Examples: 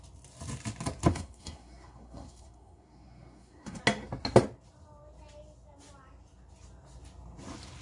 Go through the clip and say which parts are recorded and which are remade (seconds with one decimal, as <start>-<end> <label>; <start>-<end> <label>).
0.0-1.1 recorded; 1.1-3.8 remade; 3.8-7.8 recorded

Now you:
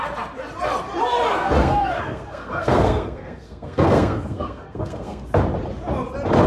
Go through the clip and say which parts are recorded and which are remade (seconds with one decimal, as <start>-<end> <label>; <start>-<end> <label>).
0.0-1.3 recorded; 1.3-5.2 remade; 5.2-6.5 recorded

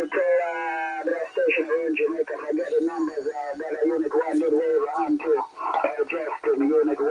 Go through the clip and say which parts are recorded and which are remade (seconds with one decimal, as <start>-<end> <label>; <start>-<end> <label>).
0.0-7.1 recorded

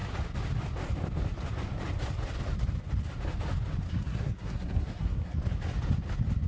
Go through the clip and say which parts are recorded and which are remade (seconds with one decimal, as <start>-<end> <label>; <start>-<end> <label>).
0.0-3.9 recorded; 3.9-5.4 remade; 5.4-6.5 recorded

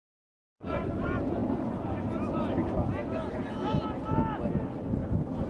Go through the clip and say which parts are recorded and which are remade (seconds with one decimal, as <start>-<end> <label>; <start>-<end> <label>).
0.0-0.9 remade; 0.9-5.5 recorded

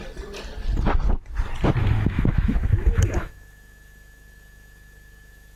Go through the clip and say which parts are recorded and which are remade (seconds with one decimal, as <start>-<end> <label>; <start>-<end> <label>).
0.0-1.8 recorded; 1.8-5.6 remade

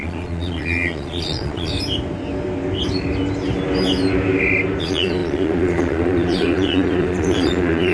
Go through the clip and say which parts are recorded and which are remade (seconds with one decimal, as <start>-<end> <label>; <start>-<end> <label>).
0.0-1.7 remade; 1.7-4.8 recorded; 4.8-7.9 remade